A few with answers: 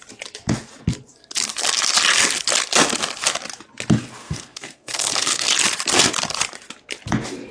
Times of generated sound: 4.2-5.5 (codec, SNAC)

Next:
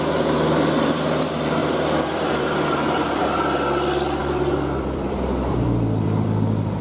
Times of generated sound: 0.0-6.8 (vocoder, BigVGAN v2)